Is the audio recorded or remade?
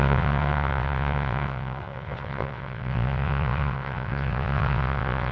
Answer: remade